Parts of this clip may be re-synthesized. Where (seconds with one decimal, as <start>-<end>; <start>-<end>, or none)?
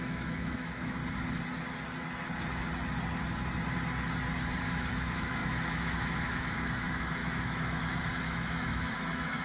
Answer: 0.0-1.0; 4.6-9.4